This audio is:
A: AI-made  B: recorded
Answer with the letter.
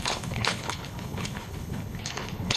A